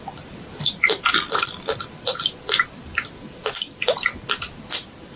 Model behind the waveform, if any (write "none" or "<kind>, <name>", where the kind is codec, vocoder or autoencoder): none